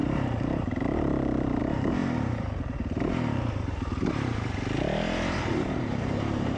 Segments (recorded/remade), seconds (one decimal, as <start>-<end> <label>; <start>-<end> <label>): 0.0-6.6 remade